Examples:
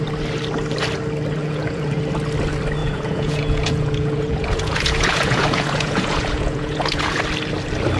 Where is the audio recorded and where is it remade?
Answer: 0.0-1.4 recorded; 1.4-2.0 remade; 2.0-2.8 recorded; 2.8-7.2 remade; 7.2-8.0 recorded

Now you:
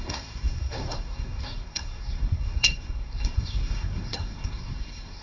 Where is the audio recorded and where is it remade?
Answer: 0.0-5.2 remade

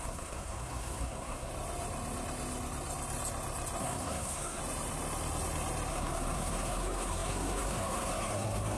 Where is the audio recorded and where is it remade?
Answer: 0.0-1.5 remade; 1.5-3.8 recorded; 3.8-4.6 remade; 4.6-5.9 recorded; 5.9-8.8 remade